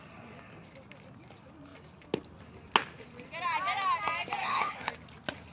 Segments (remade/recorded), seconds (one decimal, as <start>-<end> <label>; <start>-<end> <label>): 0.0-4.4 recorded; 4.4-4.9 remade; 4.9-5.5 recorded